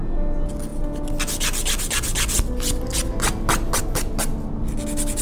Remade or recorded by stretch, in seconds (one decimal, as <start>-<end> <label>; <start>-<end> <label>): 0.0-5.2 recorded